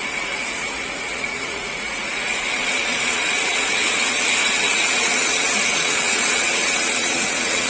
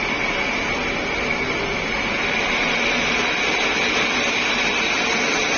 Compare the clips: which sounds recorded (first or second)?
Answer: second